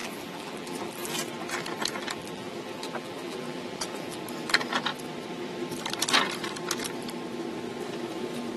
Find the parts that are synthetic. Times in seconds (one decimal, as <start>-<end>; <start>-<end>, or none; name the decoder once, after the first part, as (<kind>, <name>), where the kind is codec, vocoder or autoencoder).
0.0-1.1 (vocoder, BigVGAN v2); 2.0-4.2

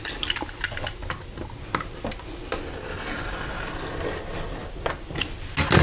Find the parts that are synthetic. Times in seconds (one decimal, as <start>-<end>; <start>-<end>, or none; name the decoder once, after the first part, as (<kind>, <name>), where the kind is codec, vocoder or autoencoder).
none

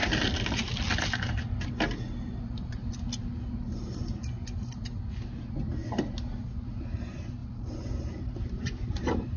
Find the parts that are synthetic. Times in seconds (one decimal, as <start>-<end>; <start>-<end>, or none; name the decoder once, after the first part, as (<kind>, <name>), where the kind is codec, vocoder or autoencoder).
2.4-2.8 (vocoder, BigVGAN v2); 6.7-7.4; 8.0-9.4

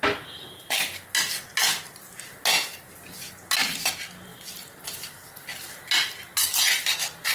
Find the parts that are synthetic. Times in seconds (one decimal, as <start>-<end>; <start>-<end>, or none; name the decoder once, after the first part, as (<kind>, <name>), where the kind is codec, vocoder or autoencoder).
none

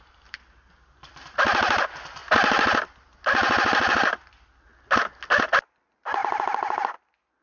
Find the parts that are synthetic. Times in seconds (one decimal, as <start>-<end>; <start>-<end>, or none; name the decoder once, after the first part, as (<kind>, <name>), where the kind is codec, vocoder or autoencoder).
0.0-2.2 (vocoder, BigVGAN v2); 2.8-4.7; 5.8-6.2